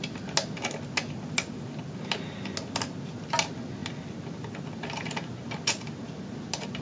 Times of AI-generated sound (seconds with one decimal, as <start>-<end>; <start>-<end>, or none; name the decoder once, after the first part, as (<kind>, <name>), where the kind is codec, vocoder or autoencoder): none

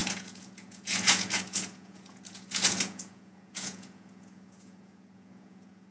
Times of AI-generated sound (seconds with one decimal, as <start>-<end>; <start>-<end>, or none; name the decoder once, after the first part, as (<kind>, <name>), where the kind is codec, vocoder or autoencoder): 0.0-5.9 (vocoder, Vocos)

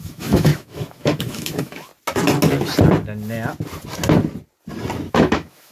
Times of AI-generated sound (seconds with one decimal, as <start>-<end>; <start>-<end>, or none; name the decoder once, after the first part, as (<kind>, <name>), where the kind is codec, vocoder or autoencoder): 0.0-1.9 (autoencoder, DAC-VAE); 5.1-5.7

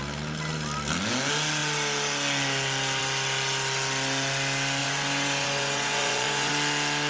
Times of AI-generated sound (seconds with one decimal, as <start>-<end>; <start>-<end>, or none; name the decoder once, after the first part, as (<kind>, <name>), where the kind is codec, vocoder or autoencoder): 4.8-6.5 (vocoder, Vocos)